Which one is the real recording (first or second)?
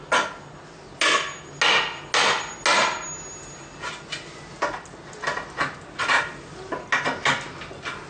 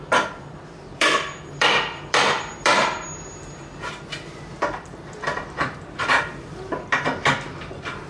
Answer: first